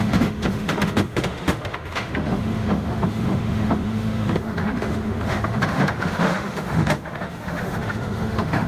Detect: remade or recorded remade